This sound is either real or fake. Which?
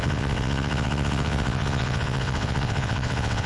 fake